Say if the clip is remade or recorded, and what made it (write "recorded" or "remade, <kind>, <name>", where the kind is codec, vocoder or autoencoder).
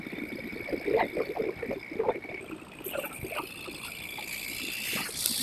recorded